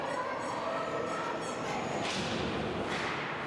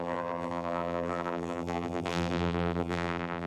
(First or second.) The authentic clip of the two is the first